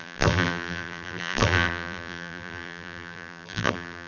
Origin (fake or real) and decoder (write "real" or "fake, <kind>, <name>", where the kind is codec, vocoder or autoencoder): fake, vocoder, BigVGAN v2